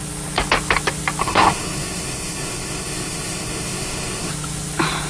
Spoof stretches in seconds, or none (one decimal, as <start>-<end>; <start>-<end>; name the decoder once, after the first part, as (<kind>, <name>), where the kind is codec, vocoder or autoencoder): 1.2-4.3 (codec, SNAC)